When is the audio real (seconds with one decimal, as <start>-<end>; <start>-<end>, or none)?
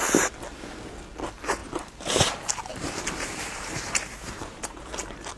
0.0-1.6; 4.8-5.4